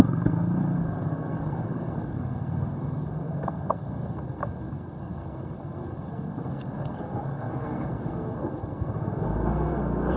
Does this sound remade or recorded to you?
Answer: remade